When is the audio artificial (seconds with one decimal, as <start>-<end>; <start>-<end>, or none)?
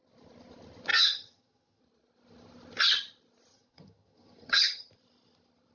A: 0.9-1.8; 3.5-4.9